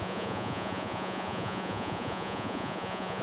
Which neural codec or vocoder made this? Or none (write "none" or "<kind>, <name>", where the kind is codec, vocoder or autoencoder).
vocoder, Vocos